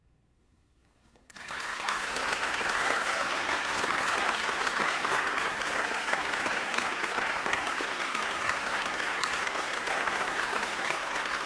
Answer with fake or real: fake